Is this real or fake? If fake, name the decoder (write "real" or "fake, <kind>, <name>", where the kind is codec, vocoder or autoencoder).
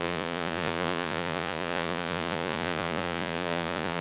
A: fake, vocoder, Vocos